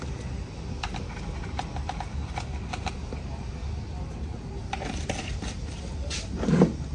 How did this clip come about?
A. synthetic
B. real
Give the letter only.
B